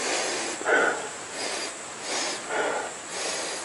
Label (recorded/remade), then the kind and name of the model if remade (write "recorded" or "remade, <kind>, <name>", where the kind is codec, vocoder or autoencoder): recorded